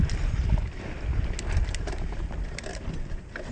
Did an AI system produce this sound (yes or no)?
no